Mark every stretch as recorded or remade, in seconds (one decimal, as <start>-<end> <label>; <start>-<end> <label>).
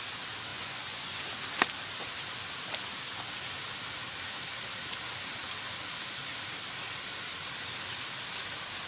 0.0-0.5 recorded; 0.5-1.2 remade; 1.2-8.9 recorded